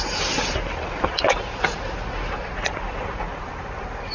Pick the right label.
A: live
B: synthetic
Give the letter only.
A